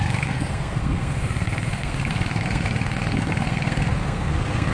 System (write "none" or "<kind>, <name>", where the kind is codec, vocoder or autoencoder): codec, SNAC